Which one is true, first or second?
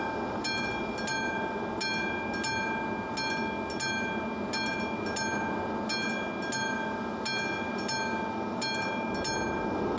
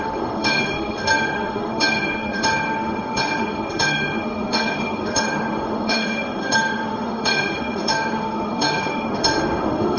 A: first